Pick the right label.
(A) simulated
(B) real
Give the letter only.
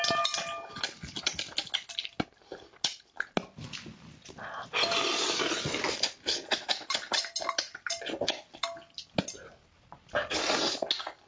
B